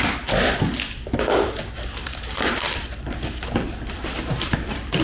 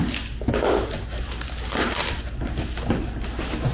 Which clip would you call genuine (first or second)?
second